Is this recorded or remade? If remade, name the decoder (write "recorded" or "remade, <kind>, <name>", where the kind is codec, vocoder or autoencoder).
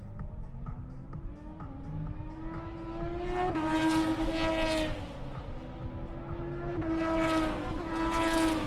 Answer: recorded